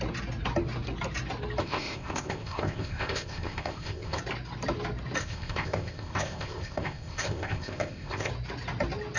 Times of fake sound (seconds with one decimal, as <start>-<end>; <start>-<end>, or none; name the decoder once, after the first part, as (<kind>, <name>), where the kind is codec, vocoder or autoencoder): 1.6-4.2 (codec, ZipCodec); 5.2-8.3